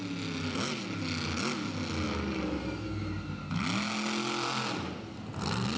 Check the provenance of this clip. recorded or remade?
recorded